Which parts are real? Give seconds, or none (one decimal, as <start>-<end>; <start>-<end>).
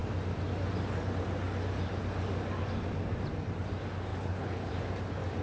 0.0-4.1; 4.7-5.4